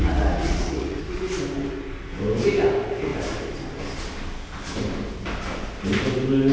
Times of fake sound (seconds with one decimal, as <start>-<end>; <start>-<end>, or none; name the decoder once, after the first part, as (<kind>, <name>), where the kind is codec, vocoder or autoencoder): 0.0-1.0 (vocoder, Vocos)